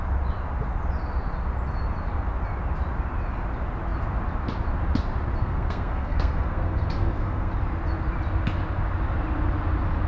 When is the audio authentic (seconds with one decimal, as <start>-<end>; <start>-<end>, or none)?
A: 0.0-5.4; 7.5-10.1

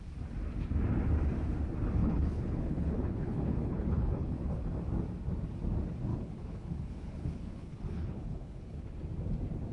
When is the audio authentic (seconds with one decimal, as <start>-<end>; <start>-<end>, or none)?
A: 0.0-2.0; 4.5-6.1; 8.9-9.7

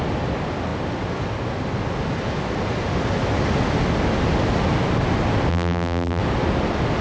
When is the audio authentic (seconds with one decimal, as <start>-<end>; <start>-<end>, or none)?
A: 0.0-5.5; 6.2-7.0